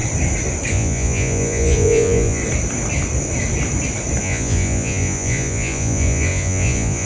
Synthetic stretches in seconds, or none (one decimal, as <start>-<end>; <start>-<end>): 0.7-2.4; 4.2-7.1